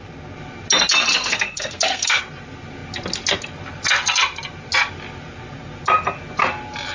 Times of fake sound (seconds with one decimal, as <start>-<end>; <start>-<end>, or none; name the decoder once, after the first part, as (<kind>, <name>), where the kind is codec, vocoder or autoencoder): 1.1-2.2 (codec, SNAC)